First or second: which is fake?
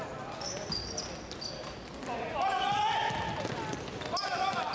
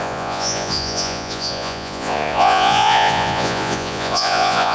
second